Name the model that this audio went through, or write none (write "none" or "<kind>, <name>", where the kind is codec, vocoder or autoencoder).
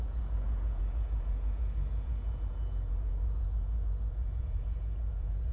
vocoder, Vocos